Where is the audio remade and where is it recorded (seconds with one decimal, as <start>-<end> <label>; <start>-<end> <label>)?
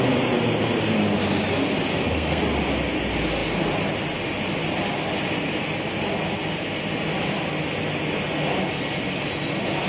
0.0-1.9 recorded; 1.9-2.4 remade; 2.4-9.9 recorded